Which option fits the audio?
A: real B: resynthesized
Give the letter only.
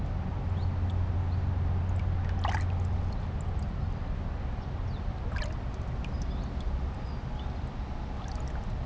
A